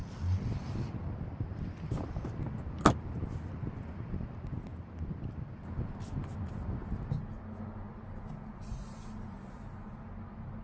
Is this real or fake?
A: real